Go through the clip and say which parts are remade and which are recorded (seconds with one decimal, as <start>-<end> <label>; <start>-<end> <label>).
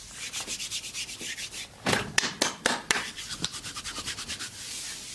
0.0-3.5 remade; 3.5-4.4 recorded; 4.4-5.1 remade